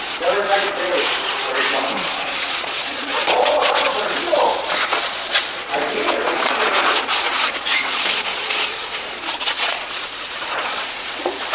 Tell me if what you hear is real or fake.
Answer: fake